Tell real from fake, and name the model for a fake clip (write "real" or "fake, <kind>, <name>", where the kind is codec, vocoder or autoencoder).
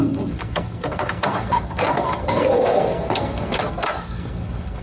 fake, codec, SNAC